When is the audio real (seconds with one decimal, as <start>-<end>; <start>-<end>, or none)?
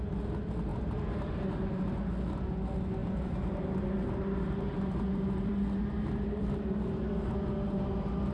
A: 0.0-0.7; 1.8-3.0; 7.5-8.3